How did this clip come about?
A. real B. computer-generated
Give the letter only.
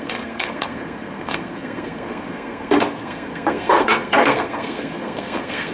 B